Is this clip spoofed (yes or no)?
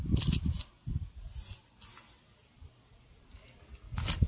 no